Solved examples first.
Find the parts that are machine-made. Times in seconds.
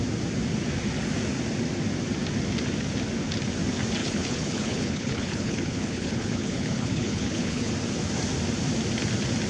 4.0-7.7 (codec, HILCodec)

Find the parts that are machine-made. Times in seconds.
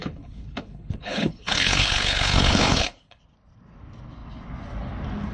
0.0-3.2 (codec, HILCodec)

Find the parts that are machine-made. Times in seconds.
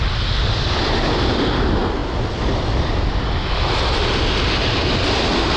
none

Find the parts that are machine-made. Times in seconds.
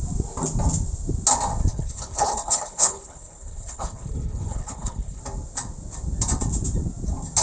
1.7-5.2 (codec, HILCodec)